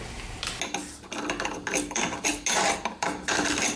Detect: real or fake real